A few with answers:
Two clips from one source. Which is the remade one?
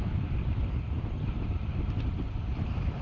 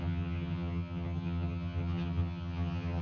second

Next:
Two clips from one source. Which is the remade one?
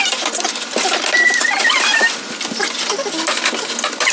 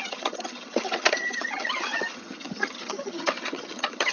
second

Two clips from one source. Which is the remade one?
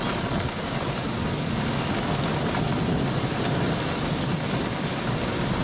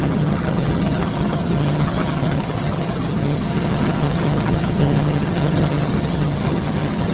second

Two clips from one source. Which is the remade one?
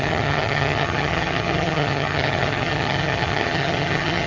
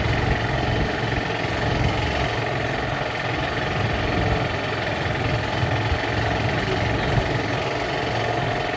first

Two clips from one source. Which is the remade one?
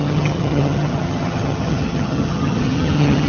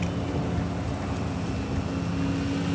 first